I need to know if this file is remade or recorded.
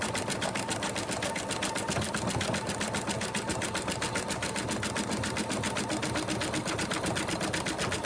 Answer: recorded